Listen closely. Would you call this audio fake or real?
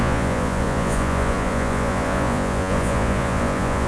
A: fake